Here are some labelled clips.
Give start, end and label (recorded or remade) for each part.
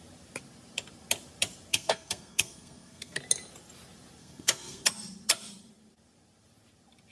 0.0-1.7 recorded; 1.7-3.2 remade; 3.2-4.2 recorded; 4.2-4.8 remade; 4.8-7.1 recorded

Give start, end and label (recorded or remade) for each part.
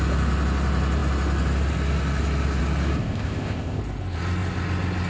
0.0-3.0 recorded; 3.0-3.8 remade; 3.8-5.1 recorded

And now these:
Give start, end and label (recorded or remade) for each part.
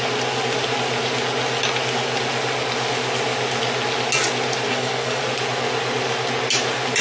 0.0-4.7 recorded; 4.7-5.2 remade; 5.2-7.0 recorded